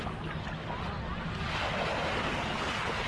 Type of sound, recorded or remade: recorded